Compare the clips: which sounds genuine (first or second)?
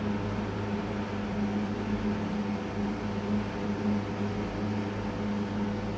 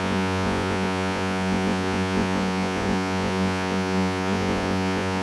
first